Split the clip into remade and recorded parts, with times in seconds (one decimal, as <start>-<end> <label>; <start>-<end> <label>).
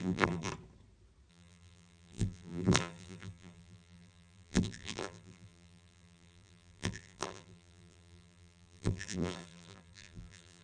0.0-0.5 remade; 0.5-1.3 recorded; 1.3-10.6 remade